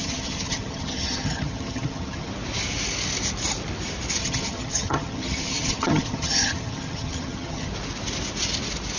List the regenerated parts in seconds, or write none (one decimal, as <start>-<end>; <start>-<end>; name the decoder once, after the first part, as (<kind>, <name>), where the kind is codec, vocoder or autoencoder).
0.0-2.3 (vocoder, HiFi-GAN); 4.2-7.7